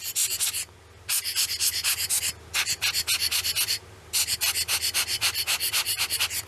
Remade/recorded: recorded